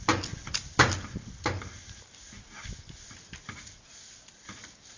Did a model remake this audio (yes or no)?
no